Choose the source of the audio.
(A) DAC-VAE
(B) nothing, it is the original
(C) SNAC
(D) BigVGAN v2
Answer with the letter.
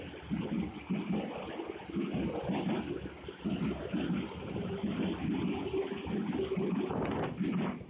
B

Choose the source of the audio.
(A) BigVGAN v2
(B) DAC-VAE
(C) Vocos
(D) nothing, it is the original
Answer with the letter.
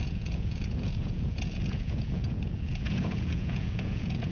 C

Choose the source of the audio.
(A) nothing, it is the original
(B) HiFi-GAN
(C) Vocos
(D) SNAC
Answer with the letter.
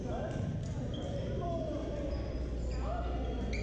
A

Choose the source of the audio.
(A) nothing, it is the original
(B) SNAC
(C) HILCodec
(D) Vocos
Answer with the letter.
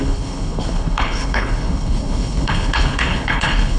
C